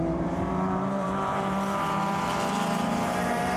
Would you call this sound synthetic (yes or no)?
yes